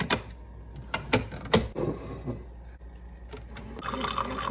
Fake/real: real